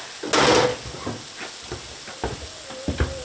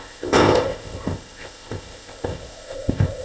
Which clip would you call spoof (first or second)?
second